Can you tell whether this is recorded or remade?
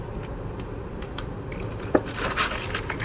recorded